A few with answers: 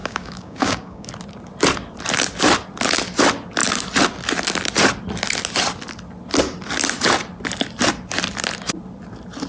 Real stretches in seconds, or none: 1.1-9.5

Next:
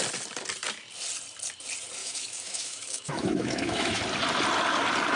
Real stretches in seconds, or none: 0.0-2.0; 4.0-5.2